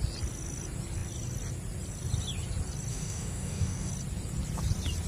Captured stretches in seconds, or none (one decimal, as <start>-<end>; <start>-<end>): 0.0-2.9; 3.9-5.1